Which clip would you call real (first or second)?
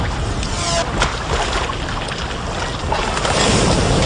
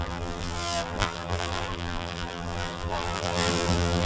first